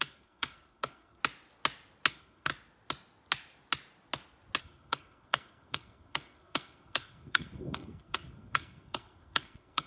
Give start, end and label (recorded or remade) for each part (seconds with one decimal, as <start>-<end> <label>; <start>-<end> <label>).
0.0-1.2 remade; 1.2-2.1 recorded; 2.1-2.5 remade; 2.5-4.6 recorded; 4.6-9.9 remade